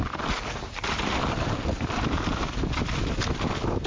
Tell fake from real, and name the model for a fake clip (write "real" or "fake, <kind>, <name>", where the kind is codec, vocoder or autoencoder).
real